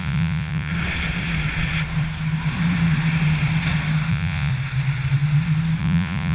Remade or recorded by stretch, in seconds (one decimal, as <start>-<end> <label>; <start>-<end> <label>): 0.0-0.7 remade; 0.7-4.1 recorded; 4.1-4.5 remade; 4.5-5.8 recorded; 5.8-6.3 remade